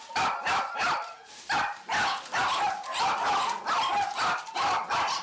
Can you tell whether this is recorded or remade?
recorded